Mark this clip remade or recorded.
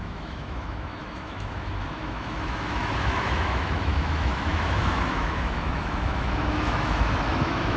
remade